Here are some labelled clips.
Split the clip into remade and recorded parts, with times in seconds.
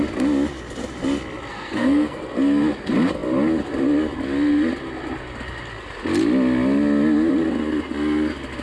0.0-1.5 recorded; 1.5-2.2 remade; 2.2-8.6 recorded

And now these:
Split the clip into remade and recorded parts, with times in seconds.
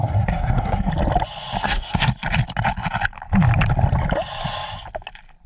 0.0-0.9 remade; 0.9-1.6 recorded; 1.6-2.1 remade; 2.1-5.5 recorded